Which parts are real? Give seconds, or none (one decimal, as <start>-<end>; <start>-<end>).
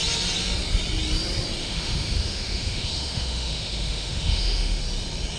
0.0-1.6; 4.8-5.4